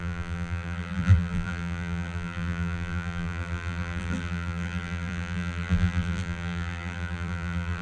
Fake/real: fake